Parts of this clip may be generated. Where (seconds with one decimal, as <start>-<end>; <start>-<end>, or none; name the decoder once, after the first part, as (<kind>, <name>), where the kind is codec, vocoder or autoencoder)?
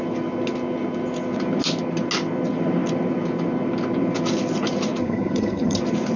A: 5.0-5.8 (vocoder, HiFi-GAN)